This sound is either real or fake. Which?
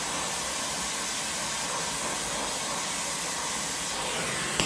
real